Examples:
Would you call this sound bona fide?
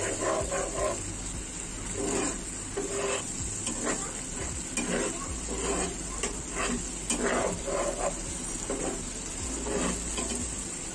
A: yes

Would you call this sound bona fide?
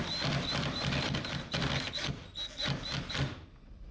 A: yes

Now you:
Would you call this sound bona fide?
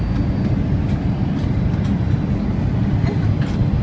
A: yes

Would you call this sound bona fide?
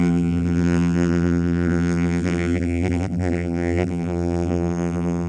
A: no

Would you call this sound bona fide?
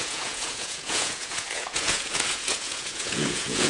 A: no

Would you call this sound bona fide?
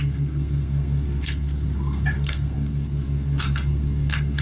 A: no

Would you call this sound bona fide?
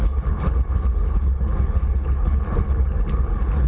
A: no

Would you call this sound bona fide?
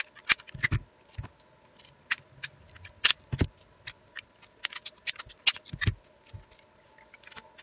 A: yes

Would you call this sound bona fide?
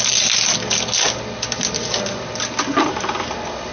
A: yes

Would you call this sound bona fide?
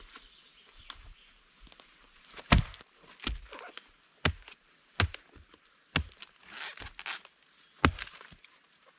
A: yes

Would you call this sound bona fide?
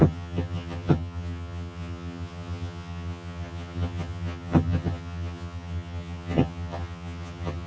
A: no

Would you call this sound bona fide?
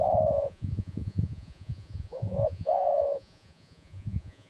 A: no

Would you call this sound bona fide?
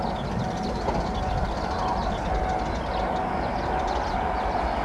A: yes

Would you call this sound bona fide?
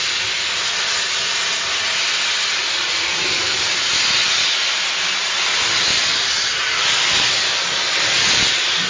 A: yes